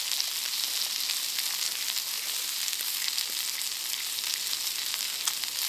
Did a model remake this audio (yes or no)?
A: no